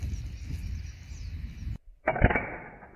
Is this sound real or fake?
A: real